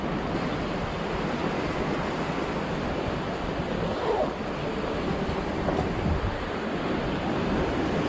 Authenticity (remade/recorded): recorded